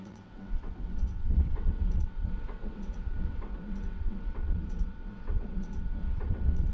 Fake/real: fake